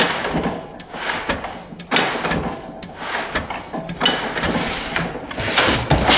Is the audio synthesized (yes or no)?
no